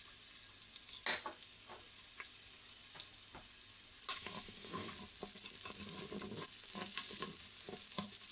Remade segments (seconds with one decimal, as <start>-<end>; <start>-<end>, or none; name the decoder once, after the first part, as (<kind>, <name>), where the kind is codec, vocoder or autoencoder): 4.1-4.9 (autoencoder, DAC-VAE)